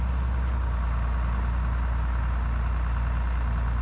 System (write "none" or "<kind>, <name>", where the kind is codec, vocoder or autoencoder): none